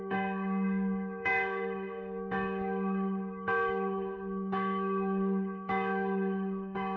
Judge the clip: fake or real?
fake